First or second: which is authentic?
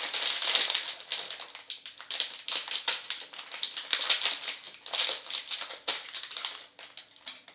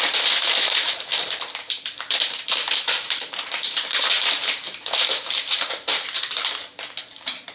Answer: first